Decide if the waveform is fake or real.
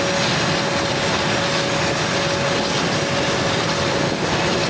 real